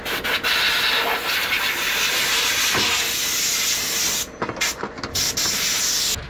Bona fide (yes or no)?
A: yes